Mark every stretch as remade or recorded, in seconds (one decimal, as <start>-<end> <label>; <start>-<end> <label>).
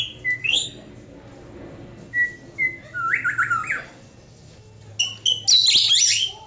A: 0.0-0.4 recorded; 0.4-0.9 remade; 0.9-6.5 recorded